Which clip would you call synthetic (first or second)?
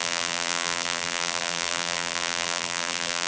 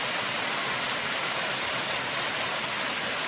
first